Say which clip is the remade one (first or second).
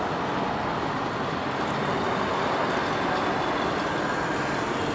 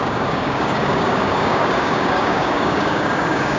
second